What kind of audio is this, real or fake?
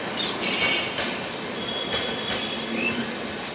real